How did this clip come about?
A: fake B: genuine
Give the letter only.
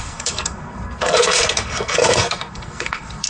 A